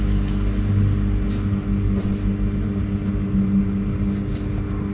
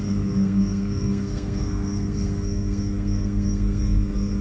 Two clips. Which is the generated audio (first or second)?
second